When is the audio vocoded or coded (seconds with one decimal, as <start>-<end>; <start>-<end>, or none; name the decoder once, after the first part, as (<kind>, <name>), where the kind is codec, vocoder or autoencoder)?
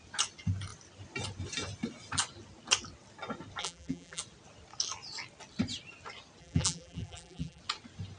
3.6-4.2 (vocoder, BigVGAN v2); 6.4-7.6